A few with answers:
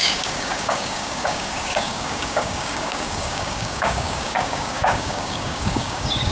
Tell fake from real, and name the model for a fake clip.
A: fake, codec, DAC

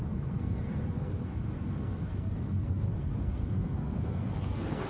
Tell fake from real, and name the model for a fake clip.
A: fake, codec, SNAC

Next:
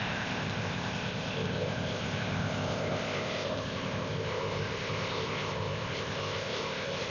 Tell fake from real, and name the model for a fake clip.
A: fake, codec, ZipCodec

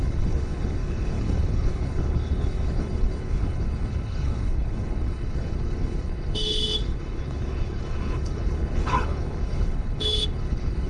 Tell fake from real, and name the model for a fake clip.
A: fake, codec, HILCodec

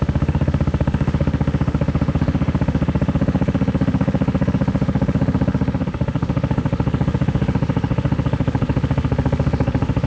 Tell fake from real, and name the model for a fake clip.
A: fake, autoencoder, DAC-VAE